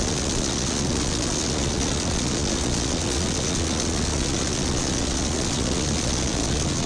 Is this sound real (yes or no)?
no